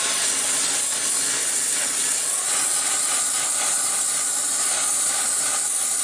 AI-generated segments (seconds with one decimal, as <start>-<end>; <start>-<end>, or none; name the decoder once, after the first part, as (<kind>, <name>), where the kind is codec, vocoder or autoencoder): 1.4-2.9 (vocoder, WaveNeXt)